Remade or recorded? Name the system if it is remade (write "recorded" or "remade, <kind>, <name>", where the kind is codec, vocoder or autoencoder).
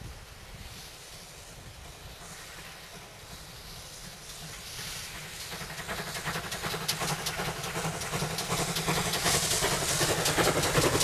recorded